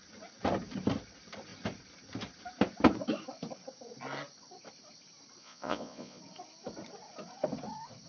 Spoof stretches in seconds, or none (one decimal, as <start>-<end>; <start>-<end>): 5.4-6.2